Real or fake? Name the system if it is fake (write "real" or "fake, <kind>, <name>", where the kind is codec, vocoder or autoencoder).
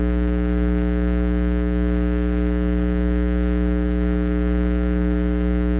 fake, codec, DAC